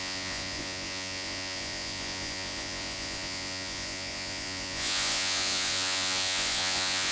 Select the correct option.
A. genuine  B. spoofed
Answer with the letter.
B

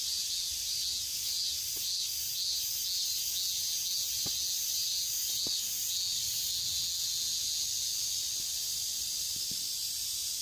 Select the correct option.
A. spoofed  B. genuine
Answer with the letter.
B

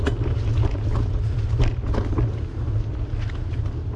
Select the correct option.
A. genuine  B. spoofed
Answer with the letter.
A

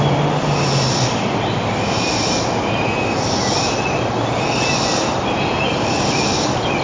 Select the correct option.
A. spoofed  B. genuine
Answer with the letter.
B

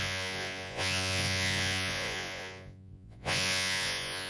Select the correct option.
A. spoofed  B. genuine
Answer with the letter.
A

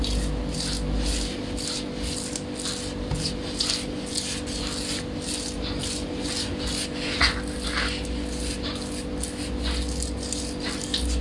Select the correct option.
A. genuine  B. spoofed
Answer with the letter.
A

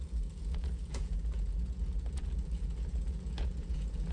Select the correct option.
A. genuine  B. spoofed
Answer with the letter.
B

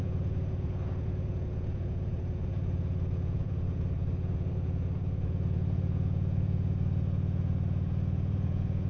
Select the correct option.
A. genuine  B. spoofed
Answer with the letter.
B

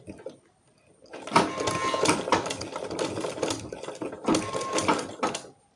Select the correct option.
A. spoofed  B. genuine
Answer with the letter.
B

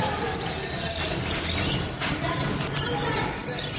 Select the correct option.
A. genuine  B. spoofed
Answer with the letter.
A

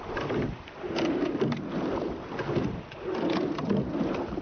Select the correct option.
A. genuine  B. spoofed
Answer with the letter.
A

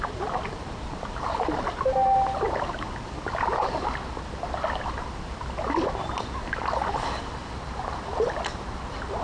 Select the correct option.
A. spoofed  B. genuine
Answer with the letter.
B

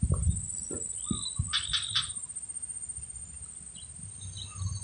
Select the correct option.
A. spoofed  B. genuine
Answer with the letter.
B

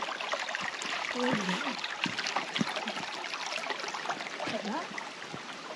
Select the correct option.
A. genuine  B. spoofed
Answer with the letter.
A